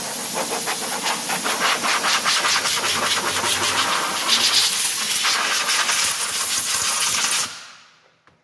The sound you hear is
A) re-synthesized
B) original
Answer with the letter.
B